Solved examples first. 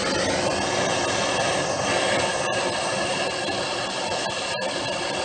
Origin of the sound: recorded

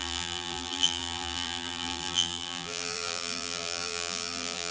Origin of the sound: remade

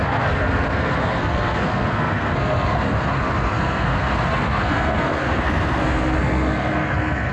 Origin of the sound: remade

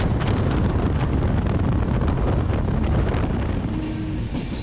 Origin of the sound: recorded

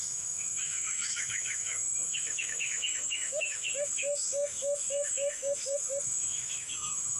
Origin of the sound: remade